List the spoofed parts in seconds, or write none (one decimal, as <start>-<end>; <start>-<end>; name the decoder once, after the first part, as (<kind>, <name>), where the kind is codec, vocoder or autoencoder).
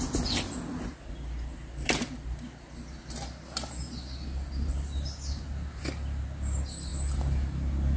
none